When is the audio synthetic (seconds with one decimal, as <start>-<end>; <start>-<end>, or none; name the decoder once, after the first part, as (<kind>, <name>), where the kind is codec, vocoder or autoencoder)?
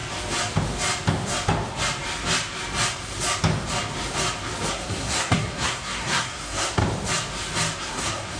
4.7-6.8 (codec, SNAC); 7.8-8.4